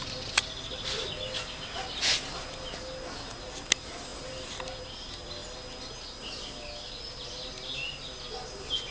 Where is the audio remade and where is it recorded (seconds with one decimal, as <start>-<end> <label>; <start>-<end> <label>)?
0.0-8.9 recorded